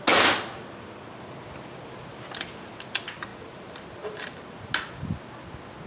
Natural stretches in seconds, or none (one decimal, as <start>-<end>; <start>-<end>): 0.0-3.3; 4.7-5.9